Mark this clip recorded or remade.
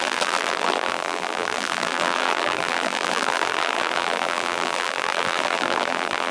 remade